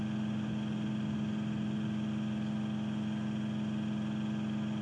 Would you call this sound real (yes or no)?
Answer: yes